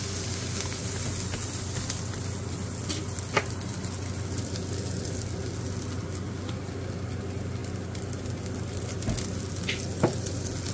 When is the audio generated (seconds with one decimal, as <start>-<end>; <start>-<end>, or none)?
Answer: none